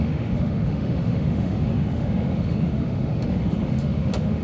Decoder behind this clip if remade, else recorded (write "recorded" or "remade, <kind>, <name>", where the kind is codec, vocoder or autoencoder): remade, autoencoder, DAC-VAE